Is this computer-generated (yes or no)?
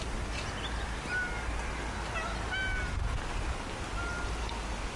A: no